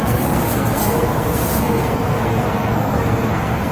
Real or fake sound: fake